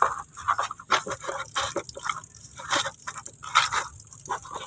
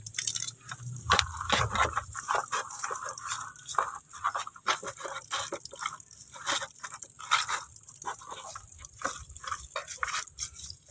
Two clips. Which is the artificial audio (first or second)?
second